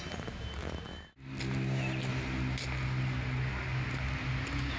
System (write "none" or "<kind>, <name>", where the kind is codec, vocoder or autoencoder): none